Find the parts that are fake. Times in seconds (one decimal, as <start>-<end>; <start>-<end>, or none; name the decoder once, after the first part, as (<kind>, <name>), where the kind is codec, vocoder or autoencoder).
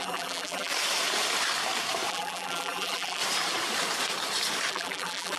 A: 0.0-0.7 (vocoder, BigVGAN v2); 2.1-3.2; 4.7-5.4